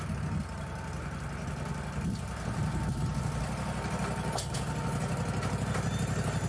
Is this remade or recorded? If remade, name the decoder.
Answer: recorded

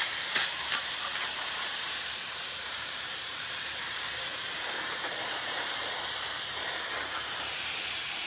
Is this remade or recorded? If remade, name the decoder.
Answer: remade, vocoder, BigVGAN v2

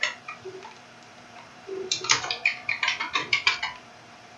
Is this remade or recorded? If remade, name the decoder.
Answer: remade, vocoder, BigVGAN v2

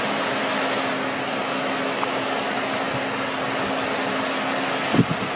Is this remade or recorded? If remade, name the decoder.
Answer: recorded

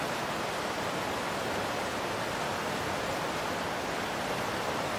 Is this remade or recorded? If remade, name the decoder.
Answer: recorded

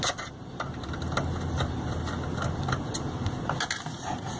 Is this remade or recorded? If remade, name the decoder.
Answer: recorded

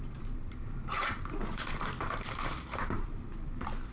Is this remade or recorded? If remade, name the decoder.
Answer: remade, vocoder, BigVGAN v2